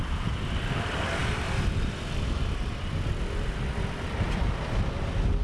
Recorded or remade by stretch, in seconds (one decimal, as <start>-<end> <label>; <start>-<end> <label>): 0.0-5.4 recorded

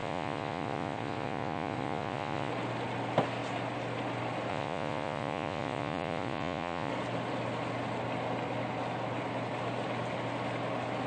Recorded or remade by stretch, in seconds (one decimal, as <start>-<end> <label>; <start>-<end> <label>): 0.0-2.5 remade; 2.5-4.5 recorded; 4.5-6.9 remade; 6.9-11.1 recorded

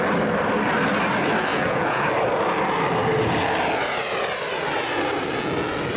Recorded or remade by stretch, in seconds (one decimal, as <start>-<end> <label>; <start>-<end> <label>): 0.0-1.5 recorded; 1.5-2.0 remade; 2.0-6.0 recorded

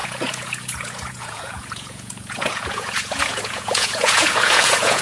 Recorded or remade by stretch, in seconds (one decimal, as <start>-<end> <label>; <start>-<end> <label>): 0.0-5.0 remade

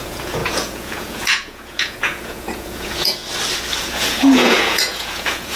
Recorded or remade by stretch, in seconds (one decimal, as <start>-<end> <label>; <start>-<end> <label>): 0.0-3.2 remade; 3.2-3.8 recorded; 3.8-5.6 remade

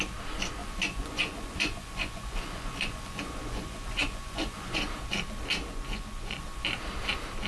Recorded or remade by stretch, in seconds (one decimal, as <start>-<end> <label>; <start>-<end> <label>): 0.0-0.6 recorded; 0.6-5.0 remade; 5.0-5.7 recorded; 5.7-6.4 remade; 6.4-7.5 recorded

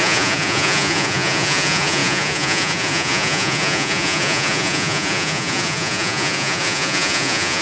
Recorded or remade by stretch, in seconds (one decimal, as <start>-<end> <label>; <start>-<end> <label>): 0.0-7.6 remade